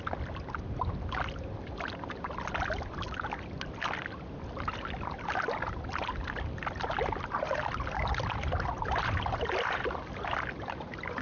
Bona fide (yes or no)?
yes